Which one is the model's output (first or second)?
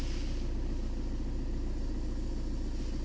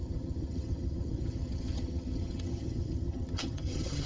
second